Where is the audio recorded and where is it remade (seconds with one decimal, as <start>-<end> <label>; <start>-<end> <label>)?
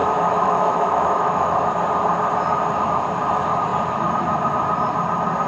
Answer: 0.0-1.7 remade; 1.7-5.5 recorded